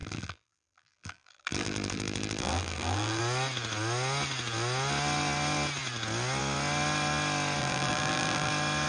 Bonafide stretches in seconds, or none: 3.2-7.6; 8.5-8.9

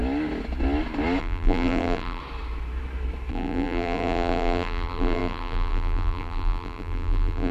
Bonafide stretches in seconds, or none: 0.0-1.2; 2.2-3.3

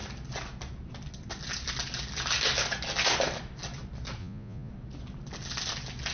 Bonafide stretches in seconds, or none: 0.0-4.2; 4.7-6.1

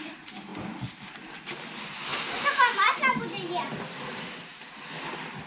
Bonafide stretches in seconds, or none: 0.0-5.5

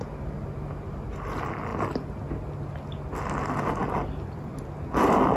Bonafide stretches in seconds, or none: 0.0-3.8; 4.5-5.4